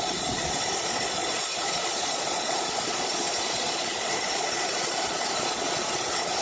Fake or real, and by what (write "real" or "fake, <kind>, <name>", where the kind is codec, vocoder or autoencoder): fake, vocoder, Vocos